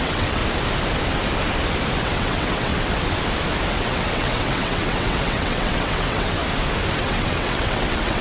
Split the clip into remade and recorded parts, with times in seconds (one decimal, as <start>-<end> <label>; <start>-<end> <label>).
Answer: 0.0-0.4 remade; 0.4-2.0 recorded; 2.0-2.7 remade; 2.7-3.7 recorded; 3.7-6.4 remade; 6.4-6.9 recorded; 6.9-8.2 remade